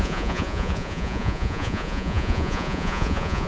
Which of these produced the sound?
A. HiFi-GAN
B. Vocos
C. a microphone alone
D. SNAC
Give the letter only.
B